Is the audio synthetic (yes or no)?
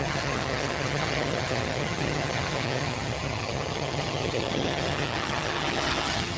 yes